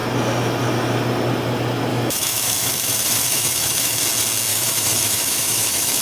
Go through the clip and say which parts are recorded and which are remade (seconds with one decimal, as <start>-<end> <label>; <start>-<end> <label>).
0.0-1.9 recorded; 1.9-4.0 remade; 4.0-4.5 recorded; 4.5-6.0 remade